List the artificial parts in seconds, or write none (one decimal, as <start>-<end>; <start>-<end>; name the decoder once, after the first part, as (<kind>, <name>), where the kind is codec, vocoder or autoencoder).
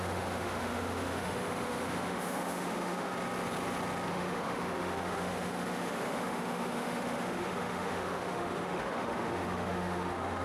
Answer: 0.0-3.1 (autoencoder, DAC-VAE); 4.1-10.4